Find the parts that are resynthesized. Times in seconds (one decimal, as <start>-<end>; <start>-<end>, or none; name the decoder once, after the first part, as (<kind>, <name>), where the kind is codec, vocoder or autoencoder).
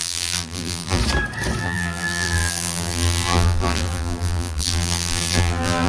0.0-1.0 (vocoder, BigVGAN v2); 1.6-5.9